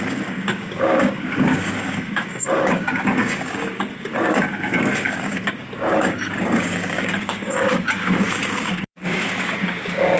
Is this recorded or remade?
remade